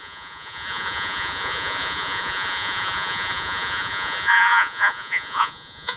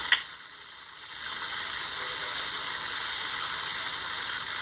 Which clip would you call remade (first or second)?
first